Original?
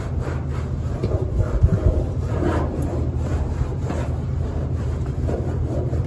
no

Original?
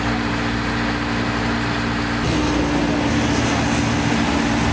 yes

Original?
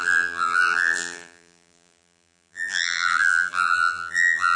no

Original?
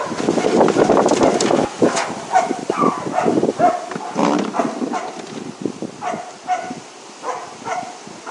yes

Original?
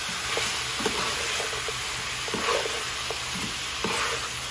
yes